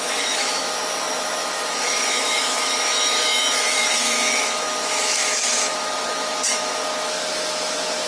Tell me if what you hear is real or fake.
fake